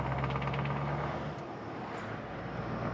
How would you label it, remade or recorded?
recorded